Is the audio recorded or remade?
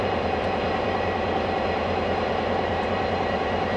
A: remade